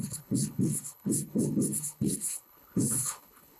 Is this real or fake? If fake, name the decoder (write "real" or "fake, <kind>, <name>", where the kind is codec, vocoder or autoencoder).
fake, codec, HILCodec